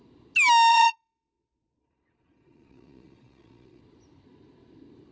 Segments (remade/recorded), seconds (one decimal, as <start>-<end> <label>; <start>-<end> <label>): 0.0-0.7 recorded; 0.7-3.8 remade; 3.8-5.1 recorded